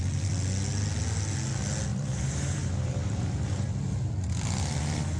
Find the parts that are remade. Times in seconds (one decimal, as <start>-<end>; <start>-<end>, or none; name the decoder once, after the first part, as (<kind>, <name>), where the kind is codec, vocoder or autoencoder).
1.9-3.7 (vocoder, BigVGAN v2)